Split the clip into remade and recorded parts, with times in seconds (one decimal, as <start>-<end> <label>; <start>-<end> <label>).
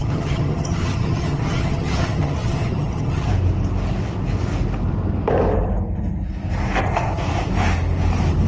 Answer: 0.0-3.3 remade; 3.3-8.5 recorded